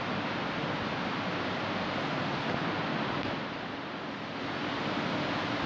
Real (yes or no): yes